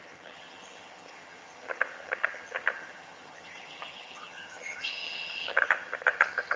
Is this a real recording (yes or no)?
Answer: no